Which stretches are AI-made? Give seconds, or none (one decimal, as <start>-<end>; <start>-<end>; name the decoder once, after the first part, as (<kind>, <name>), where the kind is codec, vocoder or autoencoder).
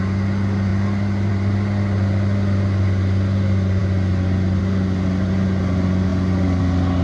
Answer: none